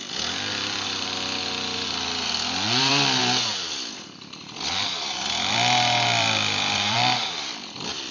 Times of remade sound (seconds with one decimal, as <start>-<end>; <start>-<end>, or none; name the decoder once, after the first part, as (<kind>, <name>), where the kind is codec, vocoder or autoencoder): 0.0-3.2 (vocoder, BigVGAN v2); 4.7-8.1